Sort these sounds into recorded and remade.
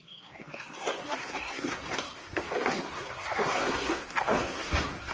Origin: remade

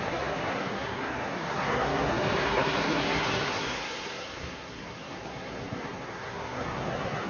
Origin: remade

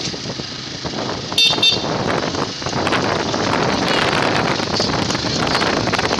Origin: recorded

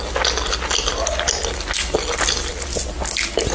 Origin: recorded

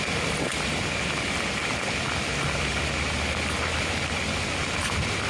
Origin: recorded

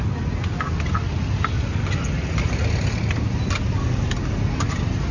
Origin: recorded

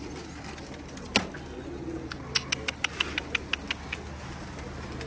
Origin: recorded